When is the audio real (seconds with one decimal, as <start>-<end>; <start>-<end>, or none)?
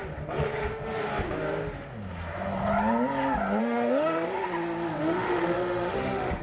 0.0-0.7; 1.1-3.6; 4.5-5.0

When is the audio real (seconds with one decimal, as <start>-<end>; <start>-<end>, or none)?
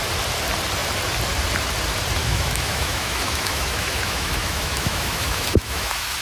0.0-2.2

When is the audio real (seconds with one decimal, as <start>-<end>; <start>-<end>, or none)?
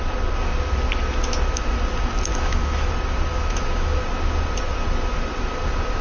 0.0-2.3; 2.9-3.3; 4.0-6.0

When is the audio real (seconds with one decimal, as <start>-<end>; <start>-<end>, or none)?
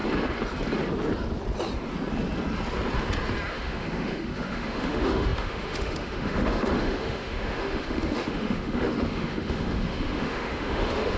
0.0-3.5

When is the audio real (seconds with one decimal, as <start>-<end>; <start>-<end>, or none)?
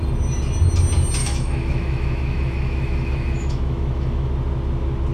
0.0-1.2; 4.3-5.1